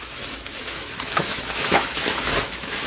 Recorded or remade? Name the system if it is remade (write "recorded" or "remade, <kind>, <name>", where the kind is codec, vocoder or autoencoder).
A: remade, autoencoder, DAC-VAE